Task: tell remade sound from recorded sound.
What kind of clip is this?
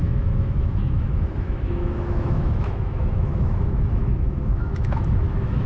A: remade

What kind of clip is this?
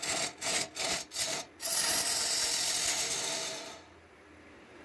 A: remade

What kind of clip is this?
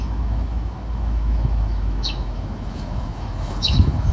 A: remade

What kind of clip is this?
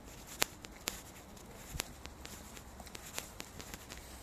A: recorded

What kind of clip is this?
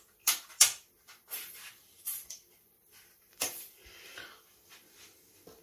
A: remade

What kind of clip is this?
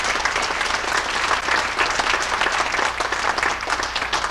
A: recorded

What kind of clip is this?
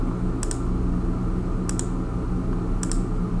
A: recorded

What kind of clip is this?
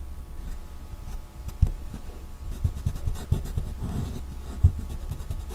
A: recorded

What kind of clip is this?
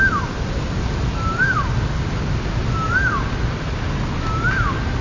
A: recorded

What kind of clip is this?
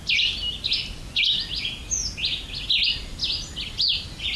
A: recorded